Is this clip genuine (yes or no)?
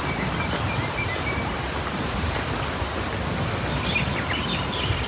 yes